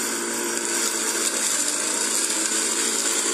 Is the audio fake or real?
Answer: real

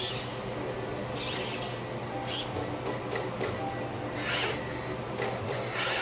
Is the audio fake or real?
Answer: real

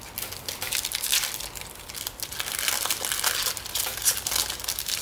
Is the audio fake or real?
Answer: real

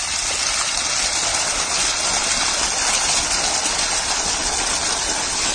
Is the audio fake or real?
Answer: real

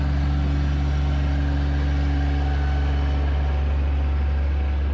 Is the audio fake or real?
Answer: real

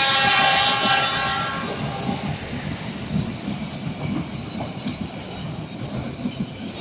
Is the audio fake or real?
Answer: real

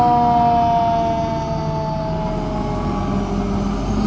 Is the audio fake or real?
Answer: real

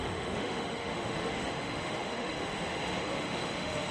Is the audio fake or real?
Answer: fake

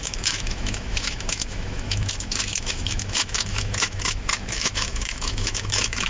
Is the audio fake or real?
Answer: fake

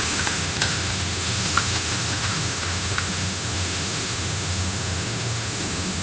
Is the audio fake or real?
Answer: fake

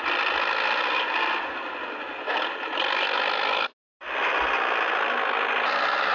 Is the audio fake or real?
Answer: real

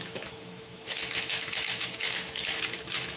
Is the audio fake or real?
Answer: fake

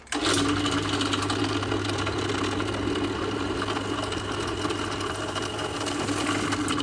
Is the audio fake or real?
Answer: real